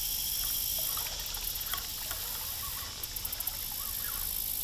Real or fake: real